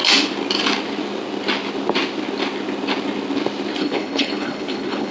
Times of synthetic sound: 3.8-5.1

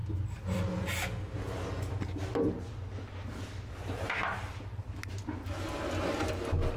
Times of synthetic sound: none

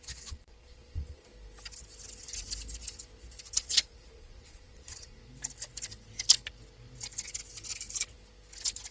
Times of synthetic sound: 0.0-1.3; 3.7-5.2

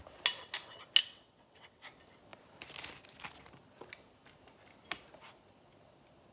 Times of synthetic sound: 1.0-1.9

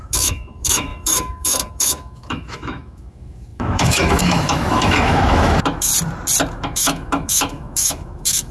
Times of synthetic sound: 0.0-5.9; 6.5-8.5